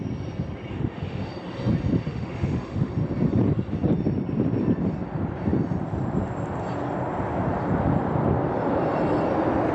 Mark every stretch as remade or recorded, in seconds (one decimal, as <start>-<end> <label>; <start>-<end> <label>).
0.0-0.7 recorded; 0.7-1.3 remade; 1.3-2.1 recorded; 2.1-2.9 remade; 2.9-9.7 recorded